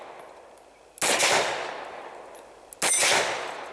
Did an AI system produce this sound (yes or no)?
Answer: no